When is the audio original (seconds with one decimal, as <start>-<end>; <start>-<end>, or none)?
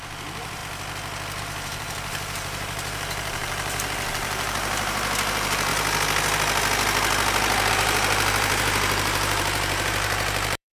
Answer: 0.6-1.4; 5.7-7.7